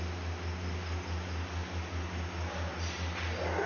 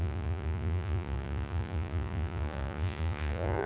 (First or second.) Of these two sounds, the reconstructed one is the second